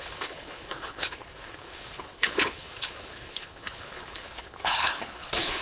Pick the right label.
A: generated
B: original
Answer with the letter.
A